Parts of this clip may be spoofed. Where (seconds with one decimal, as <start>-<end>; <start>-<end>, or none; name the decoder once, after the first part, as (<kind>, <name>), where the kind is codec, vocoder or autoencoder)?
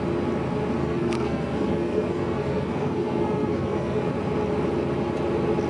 0.8-4.1 (codec, SNAC)